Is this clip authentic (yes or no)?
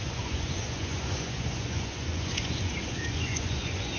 no